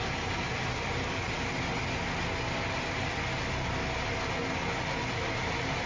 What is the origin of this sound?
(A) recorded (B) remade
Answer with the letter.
A